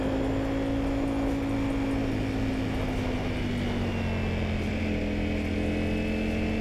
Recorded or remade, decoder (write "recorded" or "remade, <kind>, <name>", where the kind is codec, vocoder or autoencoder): recorded